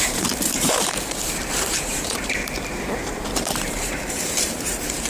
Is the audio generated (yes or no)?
yes